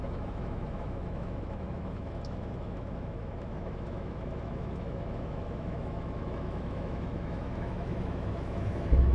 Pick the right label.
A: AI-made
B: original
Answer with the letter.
A